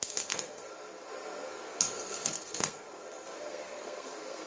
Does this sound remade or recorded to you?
remade